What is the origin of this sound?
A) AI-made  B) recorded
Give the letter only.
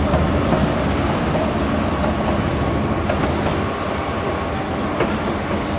B